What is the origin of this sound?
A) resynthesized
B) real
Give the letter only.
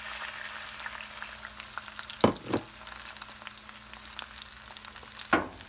B